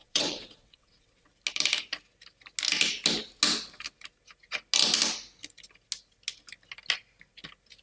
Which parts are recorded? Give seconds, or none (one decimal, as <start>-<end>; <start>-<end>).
1.3-7.8